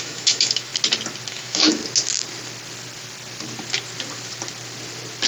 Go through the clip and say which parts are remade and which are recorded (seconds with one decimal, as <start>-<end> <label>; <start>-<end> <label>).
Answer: 0.0-0.7 remade; 0.7-1.3 recorded; 1.3-1.8 remade; 1.8-5.3 recorded

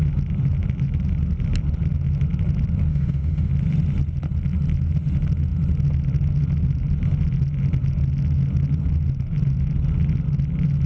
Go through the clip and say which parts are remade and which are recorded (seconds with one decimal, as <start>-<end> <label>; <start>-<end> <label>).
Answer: 0.0-2.9 recorded; 2.9-3.5 remade; 3.5-10.9 recorded

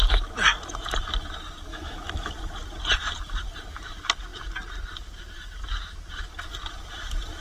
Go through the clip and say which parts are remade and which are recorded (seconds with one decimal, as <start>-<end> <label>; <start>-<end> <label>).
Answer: 0.0-1.7 recorded; 1.7-2.3 remade; 2.3-7.4 recorded

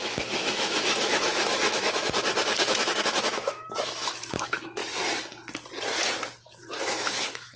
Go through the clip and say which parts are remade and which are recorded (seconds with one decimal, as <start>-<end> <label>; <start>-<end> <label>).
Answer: 0.0-4.8 remade; 4.8-6.4 recorded; 6.4-7.6 remade

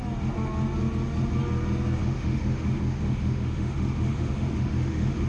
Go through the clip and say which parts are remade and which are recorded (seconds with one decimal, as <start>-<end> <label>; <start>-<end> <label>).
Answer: 0.0-2.0 recorded; 2.0-5.3 remade

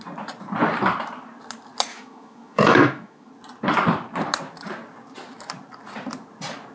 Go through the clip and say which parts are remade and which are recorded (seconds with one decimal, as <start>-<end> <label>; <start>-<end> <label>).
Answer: 0.0-1.9 recorded; 1.9-3.3 remade; 3.3-6.7 recorded

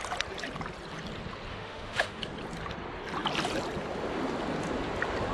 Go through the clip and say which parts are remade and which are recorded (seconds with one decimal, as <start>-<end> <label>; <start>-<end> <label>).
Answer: 0.0-1.5 recorded; 1.5-2.2 remade; 2.2-5.3 recorded

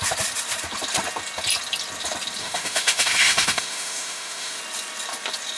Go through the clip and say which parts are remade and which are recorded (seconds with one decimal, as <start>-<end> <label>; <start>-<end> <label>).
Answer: 0.0-2.4 recorded; 2.4-4.6 remade; 4.6-5.6 recorded